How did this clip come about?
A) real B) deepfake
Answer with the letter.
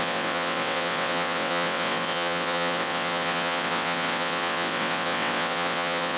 B